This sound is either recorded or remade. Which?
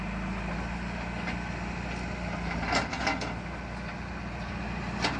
recorded